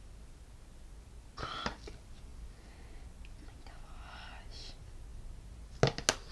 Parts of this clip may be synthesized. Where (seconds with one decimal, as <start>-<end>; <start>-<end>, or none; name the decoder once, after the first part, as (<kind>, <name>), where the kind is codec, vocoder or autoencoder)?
none